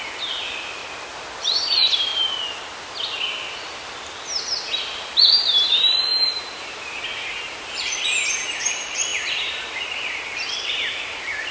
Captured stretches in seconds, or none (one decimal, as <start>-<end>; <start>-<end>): 0.8-1.4; 2.1-4.8